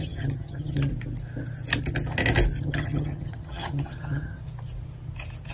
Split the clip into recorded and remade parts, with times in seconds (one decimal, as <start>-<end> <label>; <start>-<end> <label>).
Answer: 0.0-0.9 remade; 0.9-2.6 recorded; 2.6-4.4 remade; 4.4-5.5 recorded